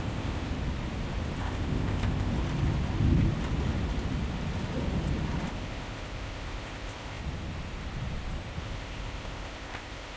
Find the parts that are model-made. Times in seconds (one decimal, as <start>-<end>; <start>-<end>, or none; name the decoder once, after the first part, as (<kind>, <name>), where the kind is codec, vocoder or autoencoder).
0.0-0.5 (codec, ZipCodec); 1.4-2.3; 5.5-7.2; 8.6-10.2

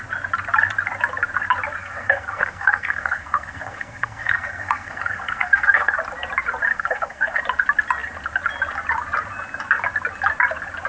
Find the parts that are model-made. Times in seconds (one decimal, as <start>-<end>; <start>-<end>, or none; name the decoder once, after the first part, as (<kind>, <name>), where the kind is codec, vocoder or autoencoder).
1.8-6.0 (codec, SNAC); 6.7-7.4

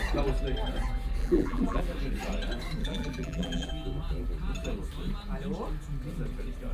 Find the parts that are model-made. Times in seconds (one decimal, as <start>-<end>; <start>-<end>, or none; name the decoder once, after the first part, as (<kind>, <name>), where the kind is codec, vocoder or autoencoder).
1.2-1.8 (vocoder, BigVGAN v2); 2.8-3.7

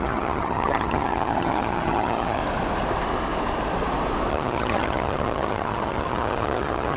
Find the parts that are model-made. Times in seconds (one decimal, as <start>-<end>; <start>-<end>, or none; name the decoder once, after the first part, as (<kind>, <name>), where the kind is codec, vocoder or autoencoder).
0.0-2.4 (vocoder, HiFi-GAN); 4.3-7.0

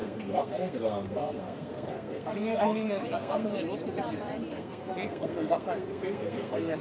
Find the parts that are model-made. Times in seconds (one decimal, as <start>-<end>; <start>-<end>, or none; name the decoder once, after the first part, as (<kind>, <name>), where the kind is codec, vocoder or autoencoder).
0.0-3.5 (codec, SNAC); 4.5-6.8

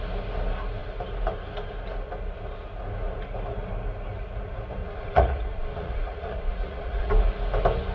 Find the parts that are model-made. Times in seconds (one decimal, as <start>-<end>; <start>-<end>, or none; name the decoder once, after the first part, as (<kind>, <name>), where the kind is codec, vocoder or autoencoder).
4.8-7.1 (vocoder, Vocos)